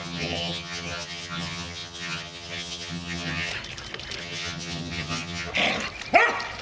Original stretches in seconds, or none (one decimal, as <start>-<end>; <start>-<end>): 3.5-4.2; 5.5-6.6